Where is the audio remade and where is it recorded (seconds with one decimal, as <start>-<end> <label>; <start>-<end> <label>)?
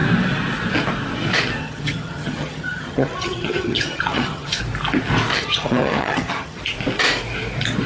0.0-1.6 recorded; 1.6-4.6 remade; 4.6-5.3 recorded; 5.3-6.6 remade; 6.6-7.9 recorded